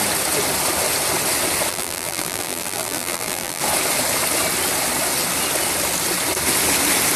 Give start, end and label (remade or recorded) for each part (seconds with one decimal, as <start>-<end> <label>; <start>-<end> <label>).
0.0-1.7 recorded; 1.7-3.6 remade; 3.6-7.2 recorded